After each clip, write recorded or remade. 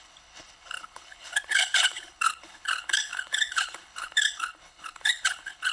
remade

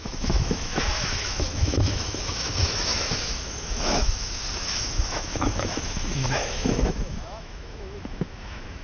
remade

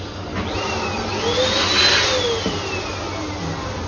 recorded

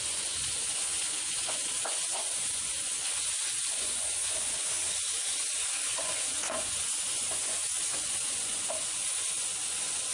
remade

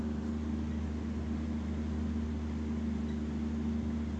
recorded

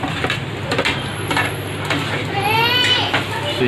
recorded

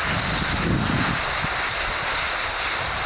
recorded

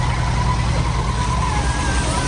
recorded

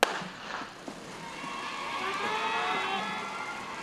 recorded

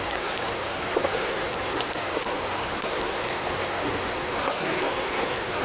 remade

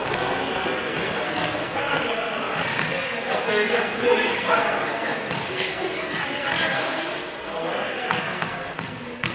remade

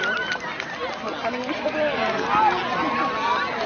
recorded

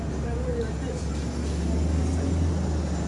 recorded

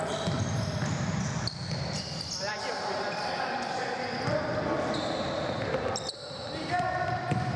remade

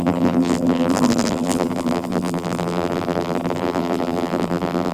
remade